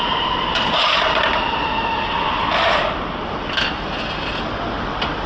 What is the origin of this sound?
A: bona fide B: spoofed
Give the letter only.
A